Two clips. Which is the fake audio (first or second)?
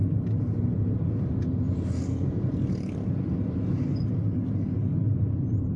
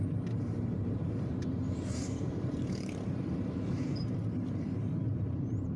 second